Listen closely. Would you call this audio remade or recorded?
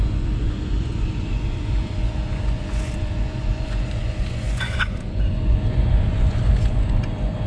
remade